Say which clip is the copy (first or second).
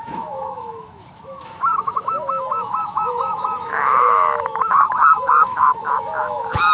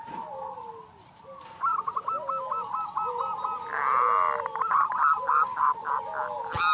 first